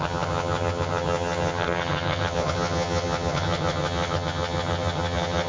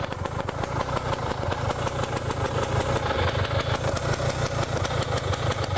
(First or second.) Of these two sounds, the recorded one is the second